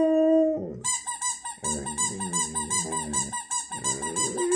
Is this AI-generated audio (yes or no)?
no